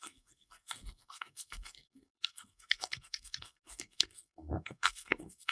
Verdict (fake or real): fake